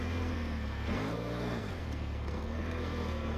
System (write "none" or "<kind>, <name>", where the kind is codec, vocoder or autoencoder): codec, SNAC